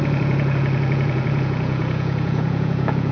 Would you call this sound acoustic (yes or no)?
no